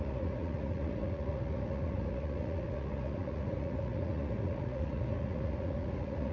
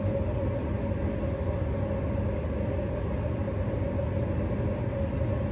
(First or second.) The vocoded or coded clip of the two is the first